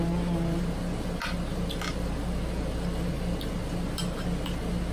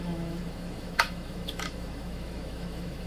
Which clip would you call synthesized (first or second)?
second